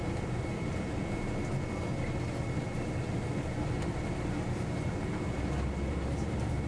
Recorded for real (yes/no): yes